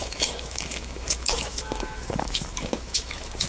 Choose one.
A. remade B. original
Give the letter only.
A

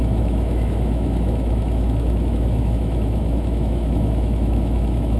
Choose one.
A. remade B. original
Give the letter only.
A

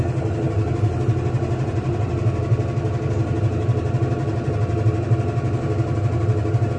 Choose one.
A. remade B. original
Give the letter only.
B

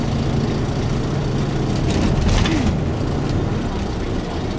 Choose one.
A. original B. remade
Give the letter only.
A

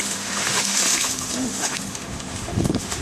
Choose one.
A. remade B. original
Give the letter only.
A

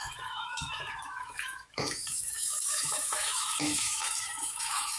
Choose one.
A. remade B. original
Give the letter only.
A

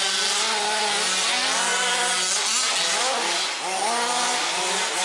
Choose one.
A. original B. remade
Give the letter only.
A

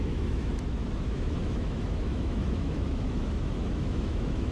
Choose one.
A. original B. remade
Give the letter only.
B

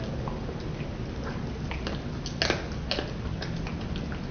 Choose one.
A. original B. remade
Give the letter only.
A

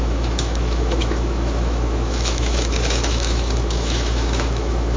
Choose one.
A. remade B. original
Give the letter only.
A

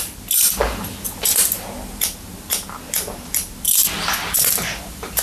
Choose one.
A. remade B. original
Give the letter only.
B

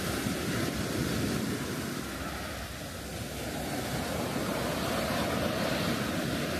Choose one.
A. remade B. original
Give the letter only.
B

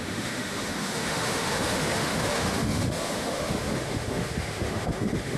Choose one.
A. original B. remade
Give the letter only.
B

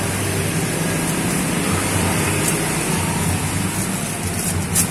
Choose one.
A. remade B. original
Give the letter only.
B